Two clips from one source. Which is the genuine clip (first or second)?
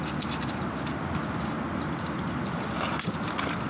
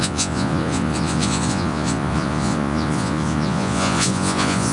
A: first